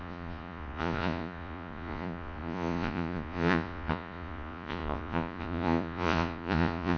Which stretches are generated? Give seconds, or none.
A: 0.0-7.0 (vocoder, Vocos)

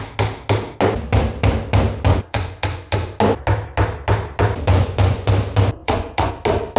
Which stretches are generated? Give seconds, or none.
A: 2.1-3.1 (vocoder, Vocos); 4.7-5.3; 5.8-6.3

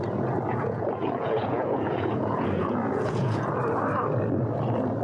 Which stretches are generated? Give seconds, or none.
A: 0.5-3.5 (vocoder, Vocos)